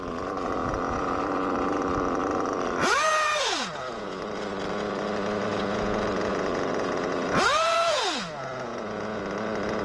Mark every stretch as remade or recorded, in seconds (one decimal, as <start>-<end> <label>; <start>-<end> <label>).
0.0-0.6 recorded; 0.6-1.2 remade; 1.2-2.8 recorded; 2.8-4.2 remade; 4.2-5.5 recorded; 5.5-9.2 remade; 9.2-9.8 recorded